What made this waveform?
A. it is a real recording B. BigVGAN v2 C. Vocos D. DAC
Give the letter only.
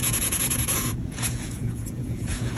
C